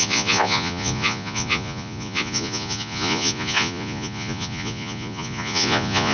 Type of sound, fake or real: fake